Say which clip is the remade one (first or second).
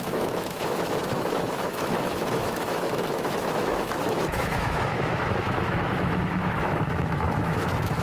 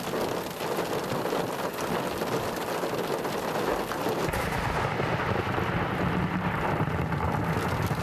first